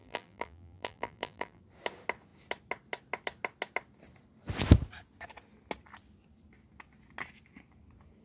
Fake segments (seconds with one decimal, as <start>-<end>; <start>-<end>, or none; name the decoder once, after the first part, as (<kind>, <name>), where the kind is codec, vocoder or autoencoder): 0.0-1.6 (vocoder, BigVGAN v2)